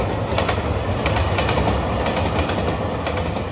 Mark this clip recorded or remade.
recorded